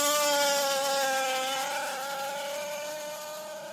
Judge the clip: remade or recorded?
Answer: recorded